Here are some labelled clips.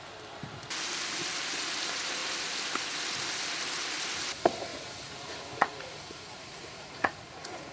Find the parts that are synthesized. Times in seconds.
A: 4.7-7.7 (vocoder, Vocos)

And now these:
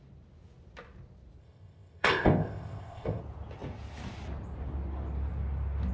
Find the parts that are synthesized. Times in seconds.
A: 1.4-3.2 (codec, ZipCodec)

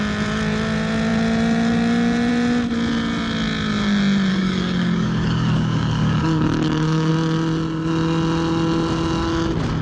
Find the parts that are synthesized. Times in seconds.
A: 4.3-7.1 (codec, DAC)

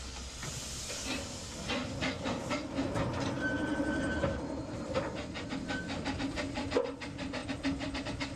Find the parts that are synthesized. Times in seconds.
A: none

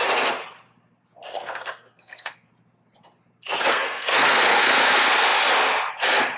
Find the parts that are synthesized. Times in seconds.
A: 1.3-2.5 (codec, SNAC); 3.7-4.7

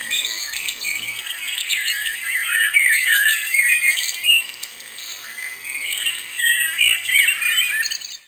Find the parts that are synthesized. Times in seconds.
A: 0.0-7.1 (codec, SNAC)